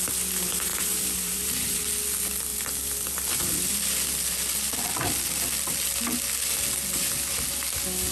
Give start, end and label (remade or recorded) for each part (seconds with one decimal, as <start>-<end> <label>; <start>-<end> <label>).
0.0-0.7 recorded; 0.7-1.8 remade; 1.8-8.1 recorded